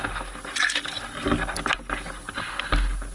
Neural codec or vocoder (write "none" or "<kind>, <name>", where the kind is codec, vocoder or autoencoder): none